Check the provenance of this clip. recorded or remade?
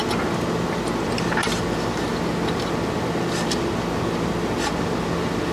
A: recorded